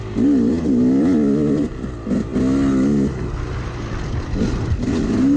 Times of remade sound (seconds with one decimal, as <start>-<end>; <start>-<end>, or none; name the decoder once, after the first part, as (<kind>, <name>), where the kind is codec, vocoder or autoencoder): none